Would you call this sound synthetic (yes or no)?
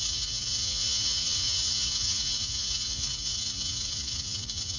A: yes